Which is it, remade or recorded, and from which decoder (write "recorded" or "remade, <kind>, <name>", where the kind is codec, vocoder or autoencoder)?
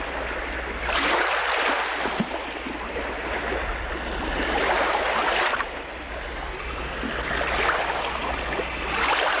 recorded